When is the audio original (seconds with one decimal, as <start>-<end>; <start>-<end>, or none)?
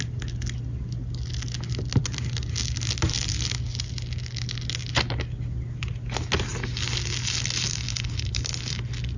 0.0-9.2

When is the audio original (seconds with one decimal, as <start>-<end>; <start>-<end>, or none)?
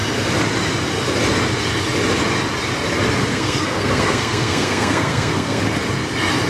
0.0-3.3; 5.6-6.5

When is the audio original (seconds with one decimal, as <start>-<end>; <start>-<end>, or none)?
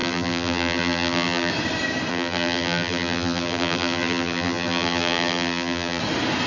1.5-2.1; 6.0-6.5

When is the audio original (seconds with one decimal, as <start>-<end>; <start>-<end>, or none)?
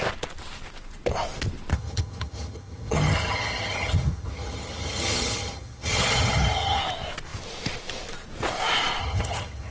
0.0-1.7; 6.8-9.0